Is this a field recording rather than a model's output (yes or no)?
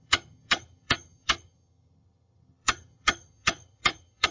no